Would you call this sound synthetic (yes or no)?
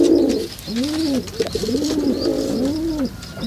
yes